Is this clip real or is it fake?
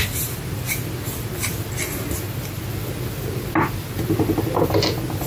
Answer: real